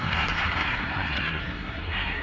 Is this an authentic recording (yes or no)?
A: no